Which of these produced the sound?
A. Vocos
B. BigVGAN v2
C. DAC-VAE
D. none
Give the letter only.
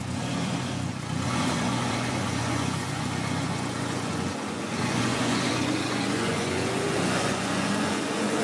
A